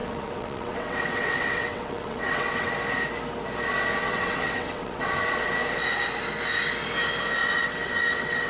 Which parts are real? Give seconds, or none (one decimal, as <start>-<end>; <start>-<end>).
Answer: 2.7-4.0; 5.5-7.4